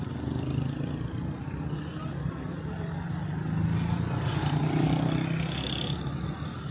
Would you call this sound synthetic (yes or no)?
no